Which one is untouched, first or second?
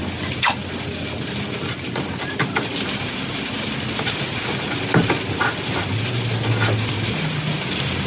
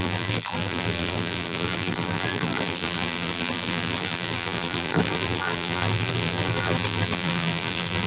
first